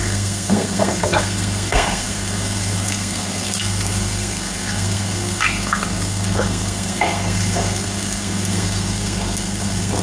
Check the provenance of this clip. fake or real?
fake